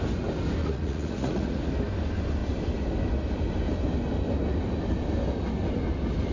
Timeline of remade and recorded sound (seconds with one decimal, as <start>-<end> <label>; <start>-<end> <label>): 0.0-0.6 recorded; 0.6-1.6 remade; 1.6-6.3 recorded